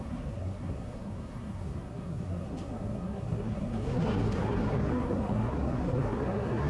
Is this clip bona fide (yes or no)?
no